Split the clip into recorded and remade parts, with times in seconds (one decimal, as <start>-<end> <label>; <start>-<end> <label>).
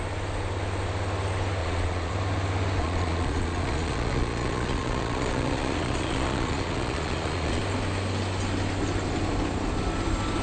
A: 0.0-1.6 recorded; 1.6-2.1 remade; 2.1-2.8 recorded; 2.8-7.6 remade; 7.6-10.4 recorded